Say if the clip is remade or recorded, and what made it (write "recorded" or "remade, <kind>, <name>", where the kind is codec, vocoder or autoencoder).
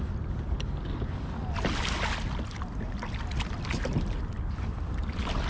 recorded